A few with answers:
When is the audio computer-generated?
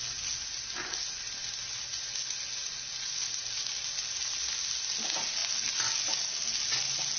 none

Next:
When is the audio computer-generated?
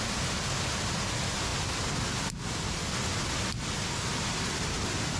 none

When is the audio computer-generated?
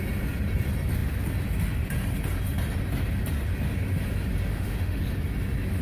4.5-5.0 (autoencoder, DAC-VAE)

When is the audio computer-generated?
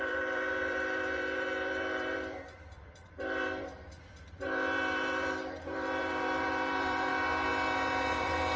0.0-7.1 (vocoder, BigVGAN v2); 8.1-8.6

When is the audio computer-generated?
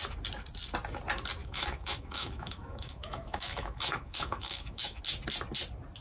1.4-5.0 (autoencoder, DAC-VAE)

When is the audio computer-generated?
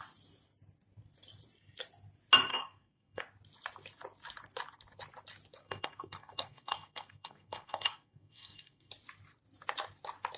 2.5-3.2 (codec, SNAC); 5.6-8.9